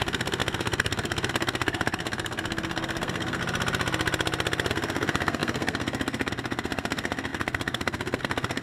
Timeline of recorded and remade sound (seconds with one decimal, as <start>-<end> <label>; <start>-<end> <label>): 0.0-3.4 remade; 3.4-4.7 recorded; 4.7-8.6 remade